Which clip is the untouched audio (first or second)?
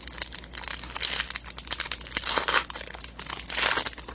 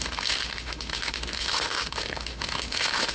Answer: first